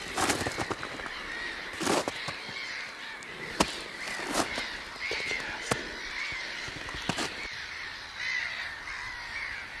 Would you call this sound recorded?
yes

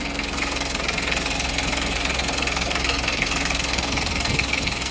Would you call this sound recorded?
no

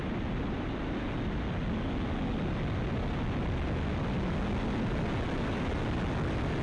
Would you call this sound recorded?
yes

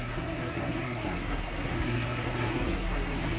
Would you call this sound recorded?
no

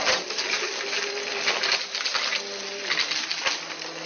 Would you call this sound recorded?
yes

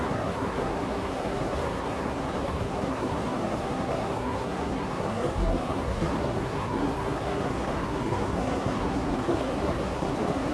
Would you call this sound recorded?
no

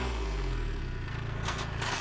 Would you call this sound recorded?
no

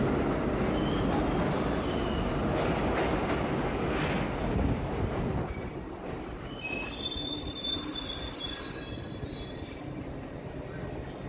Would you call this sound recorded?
yes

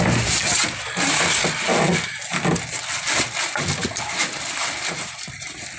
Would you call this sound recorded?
yes